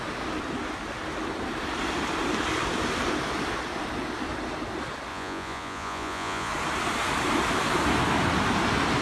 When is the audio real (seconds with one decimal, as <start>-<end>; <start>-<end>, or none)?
0.0-5.1; 6.5-9.0